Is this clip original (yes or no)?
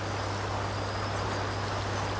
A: yes